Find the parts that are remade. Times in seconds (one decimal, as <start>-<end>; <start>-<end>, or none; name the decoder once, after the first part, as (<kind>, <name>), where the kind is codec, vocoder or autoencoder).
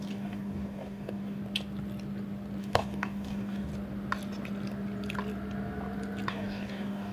0.0-1.4 (codec, DAC); 2.6-3.7; 6.3-7.1